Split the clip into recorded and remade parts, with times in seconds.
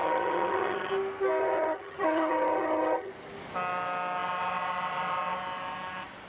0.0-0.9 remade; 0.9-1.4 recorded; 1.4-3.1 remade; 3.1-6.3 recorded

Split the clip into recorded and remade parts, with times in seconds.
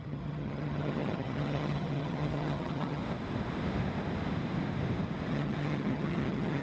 0.0-3.0 remade; 3.0-5.3 recorded; 5.3-6.6 remade